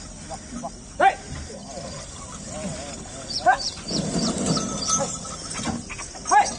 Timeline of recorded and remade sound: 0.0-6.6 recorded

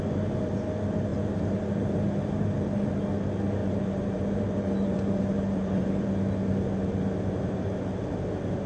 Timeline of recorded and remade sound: 0.0-1.1 recorded; 1.1-2.9 remade; 2.9-3.6 recorded; 3.6-6.1 remade; 6.1-8.7 recorded

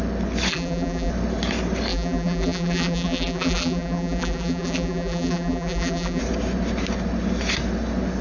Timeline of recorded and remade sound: 0.0-0.5 recorded; 0.5-1.1 remade; 1.1-1.9 recorded; 1.9-6.2 remade; 6.2-8.2 recorded

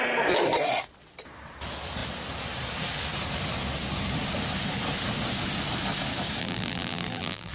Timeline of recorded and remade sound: 0.0-6.4 recorded; 6.4-7.5 remade

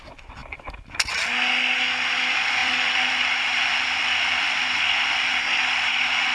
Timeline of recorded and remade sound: 0.0-0.4 recorded; 0.4-1.1 remade; 1.1-2.6 recorded; 2.6-3.2 remade; 3.2-6.3 recorded

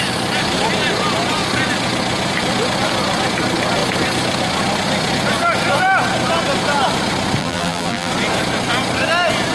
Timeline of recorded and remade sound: 0.0-7.4 recorded; 7.4-8.1 remade; 8.1-9.5 recorded

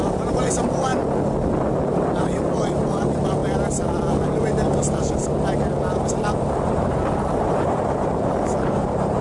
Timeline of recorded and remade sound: 0.0-0.9 remade; 0.9-2.2 recorded; 2.2-3.4 remade; 3.4-6.1 recorded; 6.1-9.2 remade

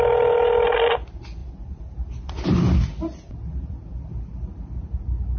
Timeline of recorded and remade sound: 0.0-5.4 recorded